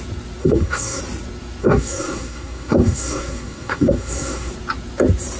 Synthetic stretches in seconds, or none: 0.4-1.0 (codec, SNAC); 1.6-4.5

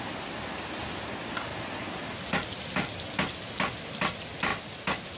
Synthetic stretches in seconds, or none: none

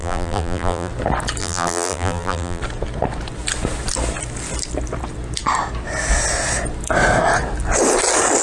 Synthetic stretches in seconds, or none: 0.0-0.9 (vocoder, BigVGAN v2); 1.4-2.6

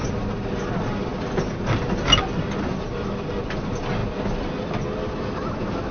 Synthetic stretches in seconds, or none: none

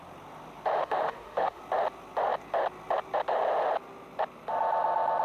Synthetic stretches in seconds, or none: 0.8-1.6 (autoencoder, DAC-VAE)

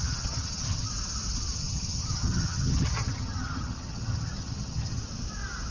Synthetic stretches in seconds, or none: 0.0-0.9 (vocoder, HiFi-GAN); 1.6-5.0

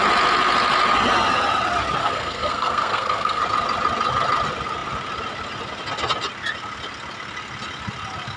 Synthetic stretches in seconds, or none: 2.0-3.4 (codec, SNAC)